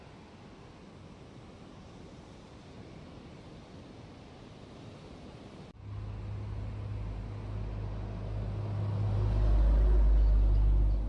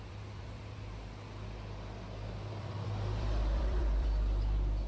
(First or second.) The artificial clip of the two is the second